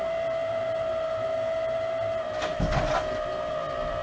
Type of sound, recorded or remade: recorded